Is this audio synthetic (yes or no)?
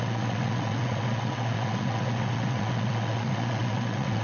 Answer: yes